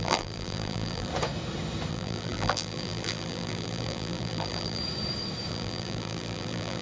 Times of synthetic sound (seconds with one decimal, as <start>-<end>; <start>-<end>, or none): 0.0-1.1; 1.9-4.8; 5.5-6.8